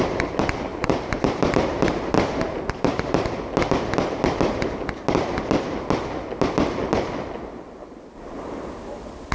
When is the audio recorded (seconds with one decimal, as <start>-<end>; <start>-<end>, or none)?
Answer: 0.0-0.7; 3.3-9.3